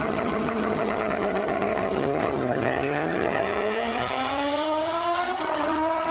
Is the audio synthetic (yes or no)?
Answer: yes